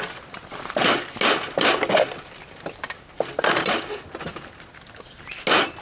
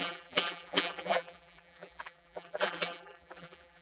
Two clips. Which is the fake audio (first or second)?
second